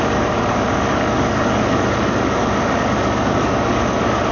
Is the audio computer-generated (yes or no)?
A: yes